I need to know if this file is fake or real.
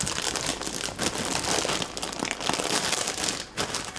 real